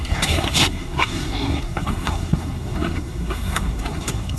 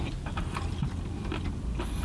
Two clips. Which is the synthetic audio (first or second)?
first